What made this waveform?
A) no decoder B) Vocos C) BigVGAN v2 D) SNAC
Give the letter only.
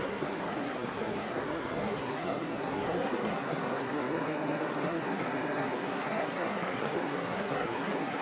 D